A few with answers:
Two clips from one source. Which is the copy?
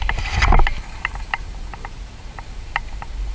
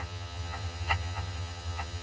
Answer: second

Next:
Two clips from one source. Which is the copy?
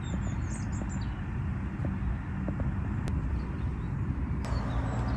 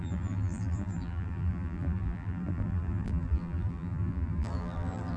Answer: second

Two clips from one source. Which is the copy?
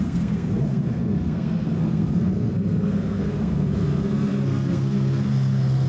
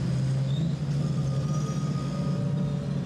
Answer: first